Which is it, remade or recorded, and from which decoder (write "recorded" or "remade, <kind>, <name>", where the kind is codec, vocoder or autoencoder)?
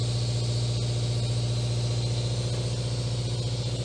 recorded